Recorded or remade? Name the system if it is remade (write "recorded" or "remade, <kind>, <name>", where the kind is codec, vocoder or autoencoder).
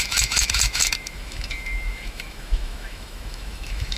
remade, autoencoder, DAC-VAE